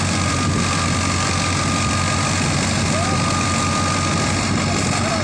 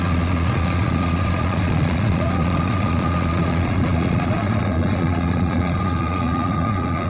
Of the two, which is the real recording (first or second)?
first